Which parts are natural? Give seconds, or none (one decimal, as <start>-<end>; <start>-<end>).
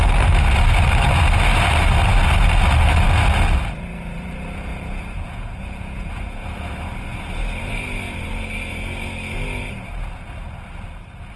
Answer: 0.0-4.7; 6.7-11.4